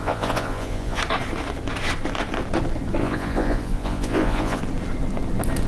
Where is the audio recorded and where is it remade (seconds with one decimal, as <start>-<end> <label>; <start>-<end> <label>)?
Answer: 0.0-1.0 remade; 1.0-3.0 recorded; 3.0-4.6 remade; 4.6-5.7 recorded